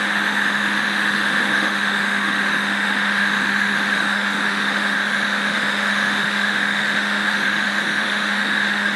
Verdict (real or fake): fake